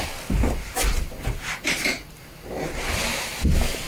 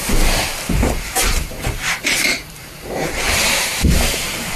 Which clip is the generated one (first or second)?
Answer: second